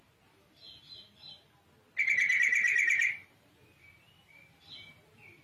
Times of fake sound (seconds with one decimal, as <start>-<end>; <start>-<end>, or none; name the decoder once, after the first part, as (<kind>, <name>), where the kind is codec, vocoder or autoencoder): 2.5-3.5 (vocoder, BigVGAN v2)